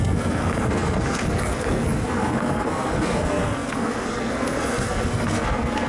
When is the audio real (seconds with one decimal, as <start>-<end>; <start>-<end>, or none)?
none